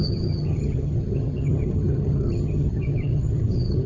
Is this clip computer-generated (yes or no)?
yes